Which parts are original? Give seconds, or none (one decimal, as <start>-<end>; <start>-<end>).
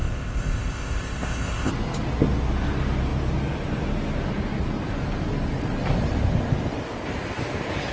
1.7-7.9